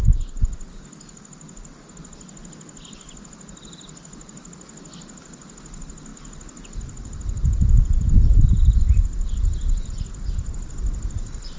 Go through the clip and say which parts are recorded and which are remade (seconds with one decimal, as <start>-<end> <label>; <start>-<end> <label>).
0.0-11.6 recorded

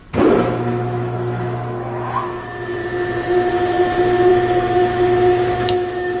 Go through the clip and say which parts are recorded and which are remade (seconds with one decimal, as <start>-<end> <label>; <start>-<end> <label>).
0.0-2.8 remade; 2.8-3.5 recorded; 3.5-6.2 remade